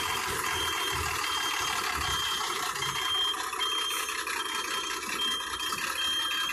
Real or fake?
real